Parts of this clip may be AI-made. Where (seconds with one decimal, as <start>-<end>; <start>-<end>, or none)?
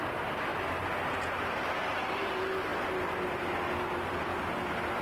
0.0-4.3